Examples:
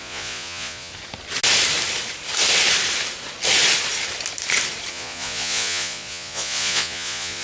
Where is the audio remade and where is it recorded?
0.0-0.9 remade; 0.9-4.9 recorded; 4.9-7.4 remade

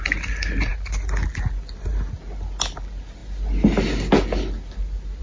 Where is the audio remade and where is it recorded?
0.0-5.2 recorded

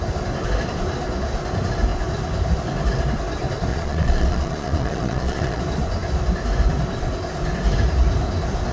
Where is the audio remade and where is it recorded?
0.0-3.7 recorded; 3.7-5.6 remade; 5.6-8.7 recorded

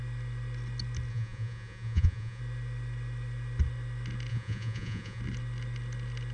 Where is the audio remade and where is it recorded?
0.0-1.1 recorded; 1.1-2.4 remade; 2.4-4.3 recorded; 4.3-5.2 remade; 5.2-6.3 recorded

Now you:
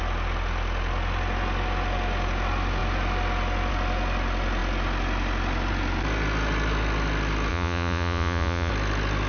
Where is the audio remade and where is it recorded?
0.0-7.5 recorded; 7.5-8.7 remade; 8.7-9.3 recorded

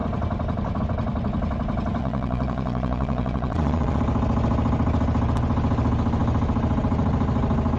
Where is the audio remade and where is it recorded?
0.0-2.0 recorded; 2.0-4.0 remade; 4.0-7.8 recorded

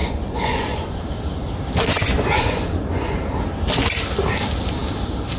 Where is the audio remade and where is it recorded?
0.0-1.0 remade; 1.0-1.9 recorded; 1.9-3.2 remade; 3.2-5.4 recorded

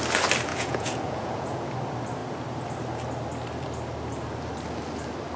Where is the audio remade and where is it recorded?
0.0-0.5 recorded; 0.5-1.7 remade; 1.7-5.4 recorded